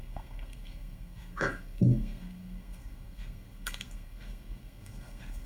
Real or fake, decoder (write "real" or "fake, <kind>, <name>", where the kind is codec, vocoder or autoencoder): fake, codec, SNAC